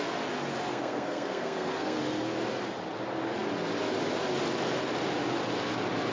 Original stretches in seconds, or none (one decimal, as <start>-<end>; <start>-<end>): 0.0-0.7; 2.0-6.1